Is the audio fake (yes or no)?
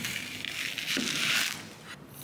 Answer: no